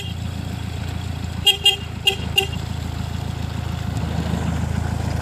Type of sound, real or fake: real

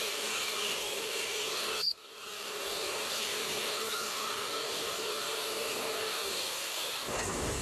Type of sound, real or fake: fake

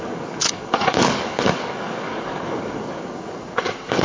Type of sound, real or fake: fake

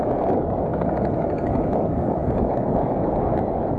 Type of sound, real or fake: fake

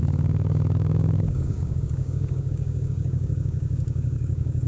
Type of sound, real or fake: fake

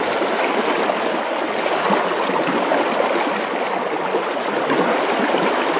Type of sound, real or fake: real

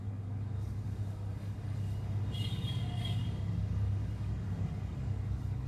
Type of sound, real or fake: fake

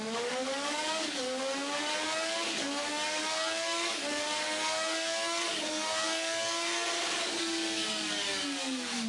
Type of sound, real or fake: fake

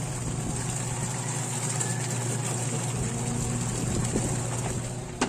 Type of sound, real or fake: real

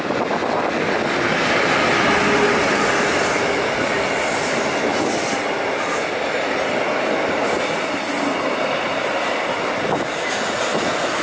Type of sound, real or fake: real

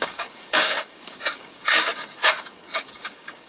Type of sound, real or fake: fake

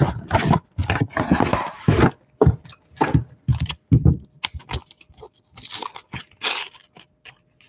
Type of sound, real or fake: real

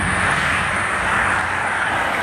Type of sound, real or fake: fake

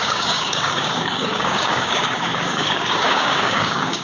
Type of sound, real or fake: fake